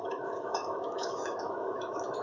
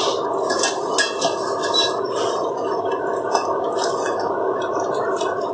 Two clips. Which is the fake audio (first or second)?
first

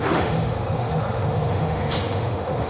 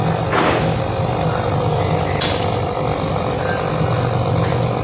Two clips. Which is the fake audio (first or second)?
first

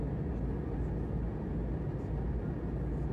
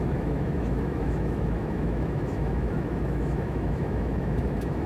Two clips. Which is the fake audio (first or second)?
second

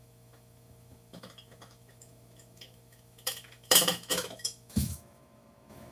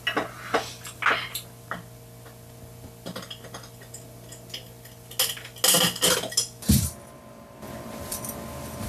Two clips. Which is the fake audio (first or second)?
first